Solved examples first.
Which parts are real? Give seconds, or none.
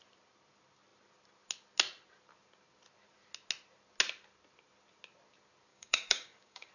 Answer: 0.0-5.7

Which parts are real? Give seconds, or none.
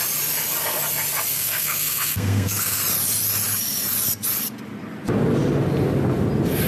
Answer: 0.0-1.3; 2.8-6.7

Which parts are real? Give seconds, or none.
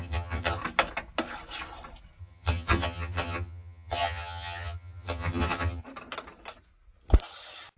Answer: 0.6-2.2; 5.8-7.8